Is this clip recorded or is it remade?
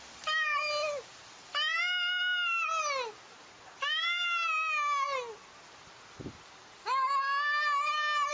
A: recorded